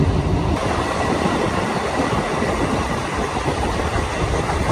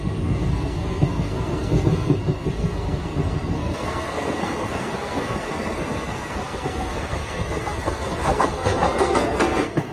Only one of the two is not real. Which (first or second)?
second